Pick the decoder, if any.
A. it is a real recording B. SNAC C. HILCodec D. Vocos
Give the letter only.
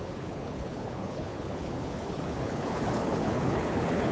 C